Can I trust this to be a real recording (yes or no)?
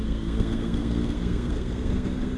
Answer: no